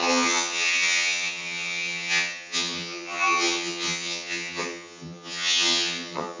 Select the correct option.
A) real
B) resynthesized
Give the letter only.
B